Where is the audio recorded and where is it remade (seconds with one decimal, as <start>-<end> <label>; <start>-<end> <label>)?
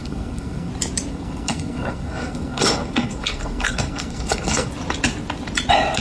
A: 0.0-0.7 remade; 0.7-1.1 recorded; 1.1-4.7 remade; 4.7-6.0 recorded